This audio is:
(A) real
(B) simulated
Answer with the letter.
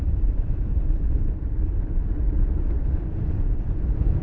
B